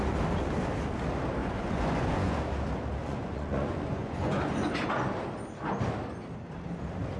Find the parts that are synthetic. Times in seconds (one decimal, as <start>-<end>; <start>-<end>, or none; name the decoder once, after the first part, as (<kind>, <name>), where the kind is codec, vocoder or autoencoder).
1.4-2.4 (vocoder, Vocos); 3.0-4.7